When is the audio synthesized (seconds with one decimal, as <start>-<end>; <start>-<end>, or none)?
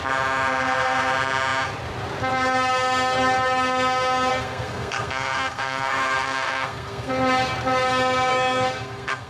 4.3-7.1; 8.3-9.3